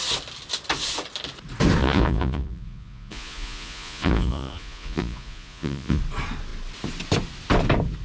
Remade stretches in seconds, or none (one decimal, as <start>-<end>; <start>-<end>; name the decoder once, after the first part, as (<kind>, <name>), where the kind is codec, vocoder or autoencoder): 1.8-6.0 (vocoder, Vocos)